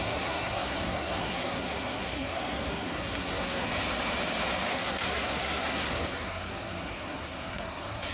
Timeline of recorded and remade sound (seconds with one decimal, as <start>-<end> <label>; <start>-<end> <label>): 0.0-3.7 remade; 3.7-4.7 recorded; 4.7-8.1 remade